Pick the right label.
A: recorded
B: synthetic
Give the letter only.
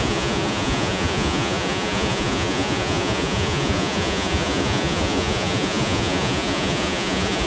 B